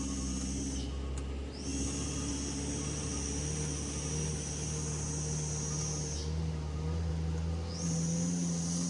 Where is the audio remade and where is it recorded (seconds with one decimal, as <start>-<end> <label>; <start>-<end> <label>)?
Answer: 0.0-8.9 recorded

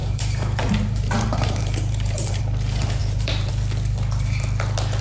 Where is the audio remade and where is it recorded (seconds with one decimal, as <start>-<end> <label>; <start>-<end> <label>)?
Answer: 0.0-2.4 remade; 2.4-3.0 recorded; 3.0-3.5 remade; 3.5-5.0 recorded